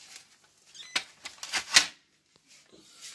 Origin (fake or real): real